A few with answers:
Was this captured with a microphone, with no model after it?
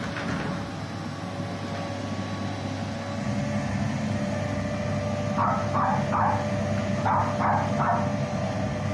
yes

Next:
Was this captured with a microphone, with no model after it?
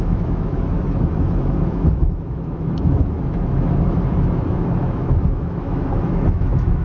no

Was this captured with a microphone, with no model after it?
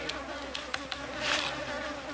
yes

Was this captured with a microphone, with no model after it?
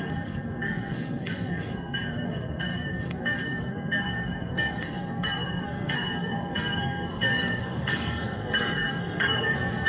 no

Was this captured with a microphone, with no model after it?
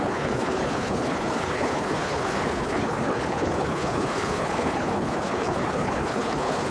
no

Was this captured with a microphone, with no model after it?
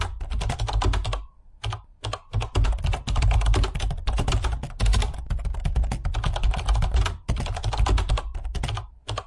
yes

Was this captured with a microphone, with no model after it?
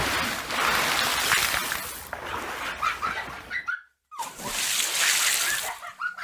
yes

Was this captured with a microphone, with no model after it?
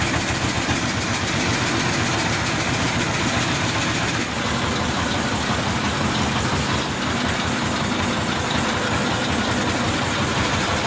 yes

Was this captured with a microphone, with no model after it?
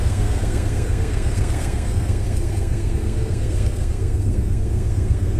no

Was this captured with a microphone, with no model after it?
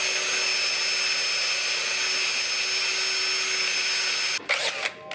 yes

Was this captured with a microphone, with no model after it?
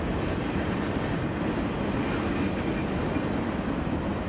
yes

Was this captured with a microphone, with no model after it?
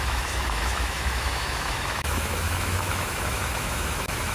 no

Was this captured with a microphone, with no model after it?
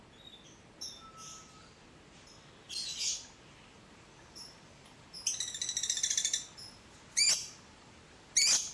yes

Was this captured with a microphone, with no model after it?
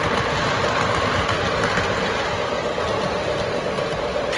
yes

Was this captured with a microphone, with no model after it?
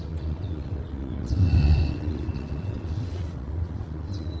no